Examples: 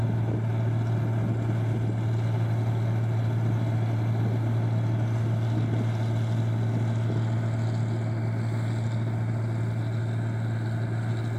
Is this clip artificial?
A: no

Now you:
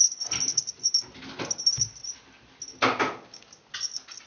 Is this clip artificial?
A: no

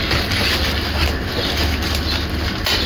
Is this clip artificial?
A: no